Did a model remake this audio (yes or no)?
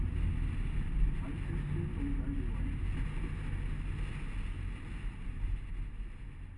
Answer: no